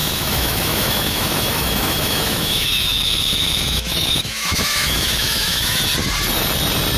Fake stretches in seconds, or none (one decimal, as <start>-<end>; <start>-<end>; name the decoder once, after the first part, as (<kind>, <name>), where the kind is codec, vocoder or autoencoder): 0.0-5.8 (autoencoder, DAC-VAE)